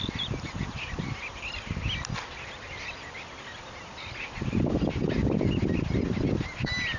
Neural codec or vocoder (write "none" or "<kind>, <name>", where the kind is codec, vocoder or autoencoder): none